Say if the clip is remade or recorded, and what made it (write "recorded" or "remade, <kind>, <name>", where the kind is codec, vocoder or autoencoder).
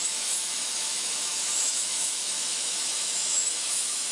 remade, autoencoder, DAC-VAE